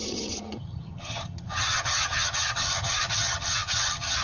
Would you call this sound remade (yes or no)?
yes